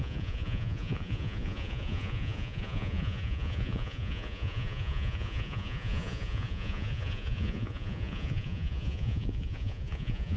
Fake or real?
fake